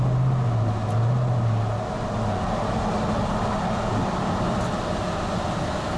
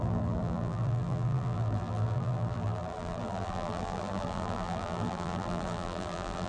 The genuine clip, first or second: first